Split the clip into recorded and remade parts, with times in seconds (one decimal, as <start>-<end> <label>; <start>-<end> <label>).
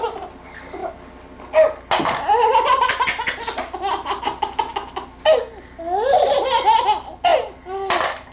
0.0-8.3 recorded